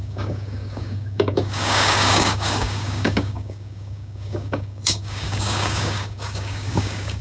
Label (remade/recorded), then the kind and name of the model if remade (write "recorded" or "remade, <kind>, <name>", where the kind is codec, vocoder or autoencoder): remade, codec, DAC